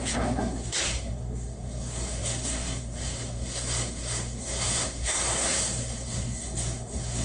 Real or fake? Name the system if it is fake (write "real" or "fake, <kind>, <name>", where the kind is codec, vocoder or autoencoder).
fake, codec, SNAC